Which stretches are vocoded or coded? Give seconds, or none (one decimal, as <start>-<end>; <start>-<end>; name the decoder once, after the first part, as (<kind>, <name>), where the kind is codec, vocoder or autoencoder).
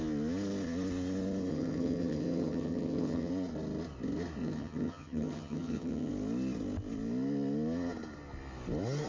1.5-3.3 (vocoder, HiFi-GAN); 4.4-6.1